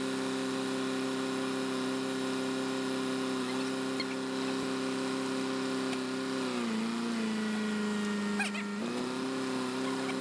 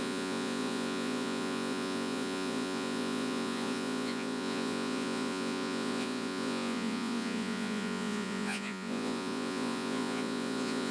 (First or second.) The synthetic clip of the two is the second